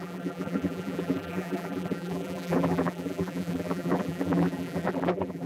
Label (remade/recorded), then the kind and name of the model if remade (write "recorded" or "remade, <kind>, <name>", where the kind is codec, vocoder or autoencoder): remade, vocoder, BigVGAN v2